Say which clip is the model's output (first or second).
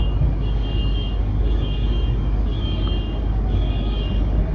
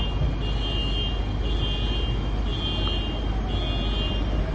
first